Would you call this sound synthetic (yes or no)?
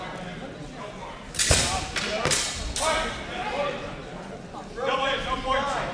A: no